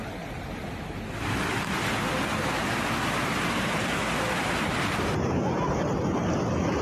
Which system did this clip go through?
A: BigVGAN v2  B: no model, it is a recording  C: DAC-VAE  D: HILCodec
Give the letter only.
B